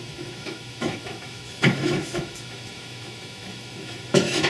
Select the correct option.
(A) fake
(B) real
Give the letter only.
A